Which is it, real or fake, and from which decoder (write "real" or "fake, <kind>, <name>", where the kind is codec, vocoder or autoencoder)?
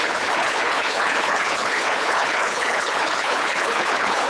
fake, codec, HILCodec